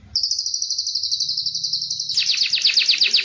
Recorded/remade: recorded